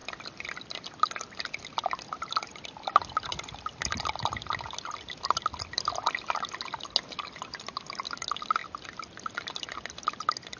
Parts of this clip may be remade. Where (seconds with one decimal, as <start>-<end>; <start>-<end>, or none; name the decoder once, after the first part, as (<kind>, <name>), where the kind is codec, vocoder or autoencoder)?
0.0-2.8 (vocoder, BigVGAN v2)